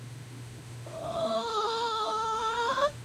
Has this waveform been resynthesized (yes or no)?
yes